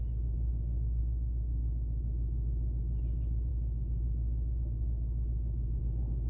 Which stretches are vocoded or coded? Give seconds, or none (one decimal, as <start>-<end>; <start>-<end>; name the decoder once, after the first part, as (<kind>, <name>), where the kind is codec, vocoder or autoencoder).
0.5-1.0 (autoencoder, DAC-VAE)